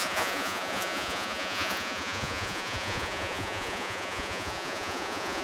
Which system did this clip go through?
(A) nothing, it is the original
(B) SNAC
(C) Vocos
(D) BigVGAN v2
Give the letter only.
C